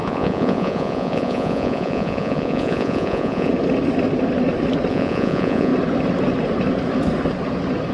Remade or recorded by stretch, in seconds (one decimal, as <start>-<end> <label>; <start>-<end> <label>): 0.0-3.5 remade; 3.5-4.9 recorded; 4.9-5.7 remade; 5.7-7.9 recorded